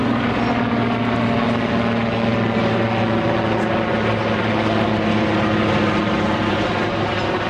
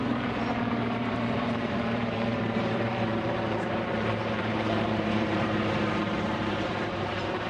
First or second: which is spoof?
second